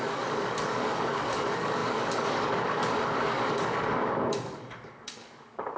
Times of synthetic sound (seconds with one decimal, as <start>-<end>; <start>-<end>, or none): 0.0-5.8